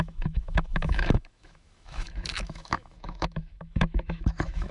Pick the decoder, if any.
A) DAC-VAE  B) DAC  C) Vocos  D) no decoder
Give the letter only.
A